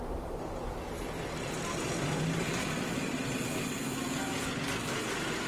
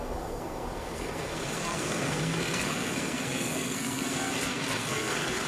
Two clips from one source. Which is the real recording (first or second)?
first